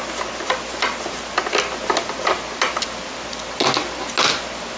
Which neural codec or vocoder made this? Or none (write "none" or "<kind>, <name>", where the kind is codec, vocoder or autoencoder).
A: none